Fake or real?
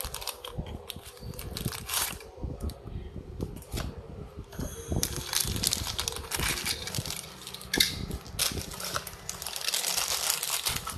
real